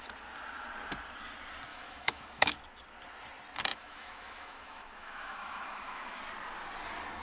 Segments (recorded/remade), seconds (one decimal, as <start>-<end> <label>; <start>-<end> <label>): 0.0-1.7 recorded; 1.7-2.6 remade; 2.6-3.7 recorded; 3.7-6.2 remade; 6.2-7.2 recorded